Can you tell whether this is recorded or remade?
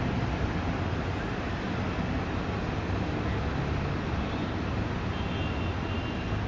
recorded